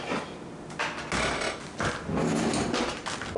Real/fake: real